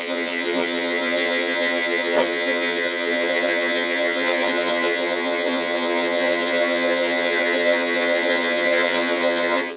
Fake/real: fake